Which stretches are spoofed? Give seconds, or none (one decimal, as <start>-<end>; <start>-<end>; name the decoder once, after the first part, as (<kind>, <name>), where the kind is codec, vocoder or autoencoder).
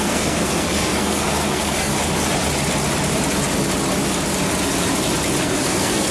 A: 0.0-1.9 (codec, SNAC); 5.4-6.1